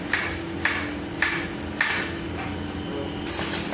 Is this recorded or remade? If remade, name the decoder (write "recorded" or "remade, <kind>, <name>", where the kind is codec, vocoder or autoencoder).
recorded